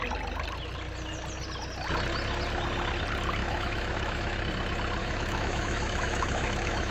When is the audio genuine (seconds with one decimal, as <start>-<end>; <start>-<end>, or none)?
0.0-3.4; 4.4-5.0